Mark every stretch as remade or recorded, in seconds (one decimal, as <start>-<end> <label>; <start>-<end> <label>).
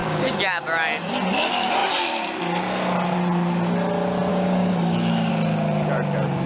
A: 0.0-0.6 remade; 0.6-4.3 recorded; 4.3-5.3 remade; 5.3-6.5 recorded